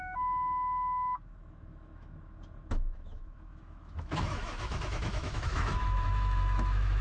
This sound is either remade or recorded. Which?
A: remade